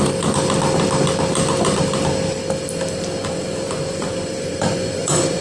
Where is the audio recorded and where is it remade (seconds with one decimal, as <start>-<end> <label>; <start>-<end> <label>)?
0.0-3.2 recorded; 3.2-5.4 remade